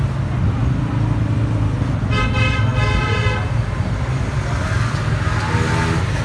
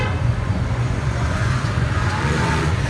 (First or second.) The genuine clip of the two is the first